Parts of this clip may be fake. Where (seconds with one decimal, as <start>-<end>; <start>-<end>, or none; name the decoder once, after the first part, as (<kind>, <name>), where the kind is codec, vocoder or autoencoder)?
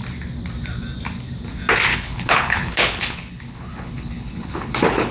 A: 1.9-5.1 (codec, HILCodec)